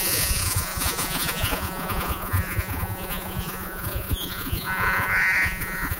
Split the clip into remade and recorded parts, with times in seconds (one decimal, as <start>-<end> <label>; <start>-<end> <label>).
0.0-6.0 remade